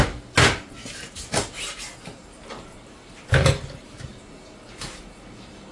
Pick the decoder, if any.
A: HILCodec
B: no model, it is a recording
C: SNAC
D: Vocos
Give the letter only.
B